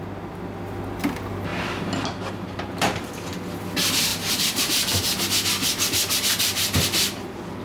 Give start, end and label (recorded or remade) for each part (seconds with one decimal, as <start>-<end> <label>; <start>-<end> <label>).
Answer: 0.0-1.5 recorded; 1.5-3.1 remade; 3.1-4.1 recorded; 4.1-5.2 remade; 5.2-7.6 recorded